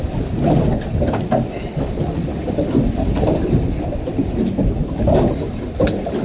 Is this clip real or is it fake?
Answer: real